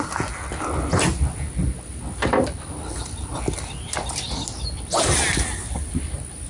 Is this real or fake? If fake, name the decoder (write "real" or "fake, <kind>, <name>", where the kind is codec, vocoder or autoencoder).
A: real